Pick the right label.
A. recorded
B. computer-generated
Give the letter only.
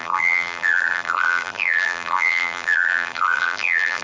B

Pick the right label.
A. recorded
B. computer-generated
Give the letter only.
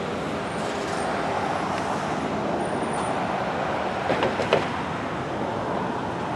A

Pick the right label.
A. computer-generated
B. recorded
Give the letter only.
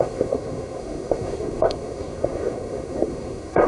A